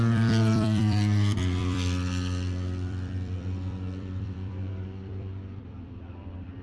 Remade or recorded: remade